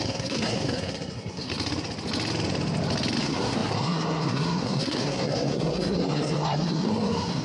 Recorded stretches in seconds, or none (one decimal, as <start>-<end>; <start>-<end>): 1.5-3.2